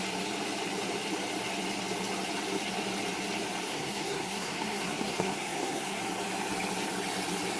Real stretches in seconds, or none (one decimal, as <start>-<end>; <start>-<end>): 0.0-3.7; 6.0-7.6